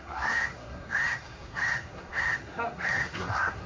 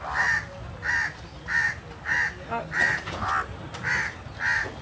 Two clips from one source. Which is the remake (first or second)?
first